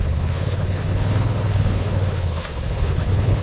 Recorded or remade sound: remade